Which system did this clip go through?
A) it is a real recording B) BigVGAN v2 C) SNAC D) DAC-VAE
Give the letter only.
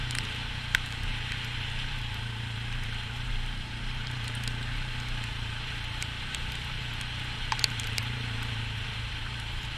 B